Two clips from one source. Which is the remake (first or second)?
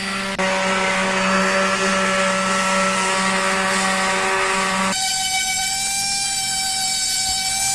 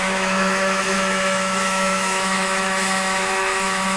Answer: second